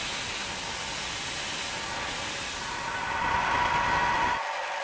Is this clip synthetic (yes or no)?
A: no